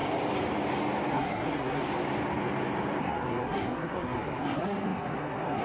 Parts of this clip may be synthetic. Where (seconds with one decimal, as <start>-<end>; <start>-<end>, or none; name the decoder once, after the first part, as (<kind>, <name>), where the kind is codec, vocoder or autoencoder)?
1.1-1.8 (codec, SNAC); 3.0-5.6